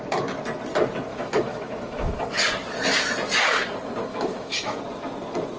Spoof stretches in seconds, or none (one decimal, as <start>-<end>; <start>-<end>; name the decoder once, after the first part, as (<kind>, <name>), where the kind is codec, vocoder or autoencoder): 1.1-2.2 (autoencoder, DAC-VAE); 4.1-4.8